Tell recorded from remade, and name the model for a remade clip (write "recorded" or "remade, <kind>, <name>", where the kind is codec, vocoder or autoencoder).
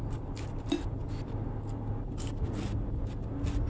recorded